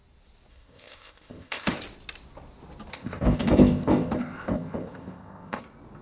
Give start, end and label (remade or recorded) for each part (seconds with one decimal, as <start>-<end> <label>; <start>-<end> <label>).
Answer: 0.0-0.5 recorded; 0.5-1.8 remade; 1.8-2.9 recorded; 2.9-5.6 remade; 5.6-6.0 recorded